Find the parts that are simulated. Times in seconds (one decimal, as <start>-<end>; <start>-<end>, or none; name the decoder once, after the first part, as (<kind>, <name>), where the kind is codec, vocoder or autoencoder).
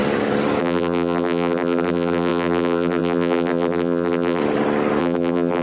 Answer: 0.6-4.4 (vocoder, BigVGAN v2); 5.0-5.6